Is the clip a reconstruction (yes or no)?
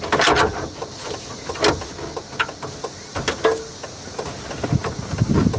no